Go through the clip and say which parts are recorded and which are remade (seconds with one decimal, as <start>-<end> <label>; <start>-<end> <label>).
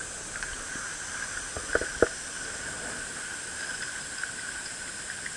0.0-5.4 recorded